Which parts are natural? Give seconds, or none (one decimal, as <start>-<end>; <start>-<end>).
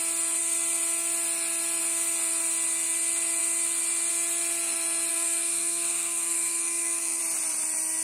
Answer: 0.0-5.1; 7.2-8.0